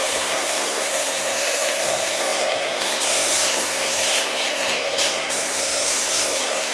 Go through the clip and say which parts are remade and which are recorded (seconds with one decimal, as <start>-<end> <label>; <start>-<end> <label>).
0.0-6.7 remade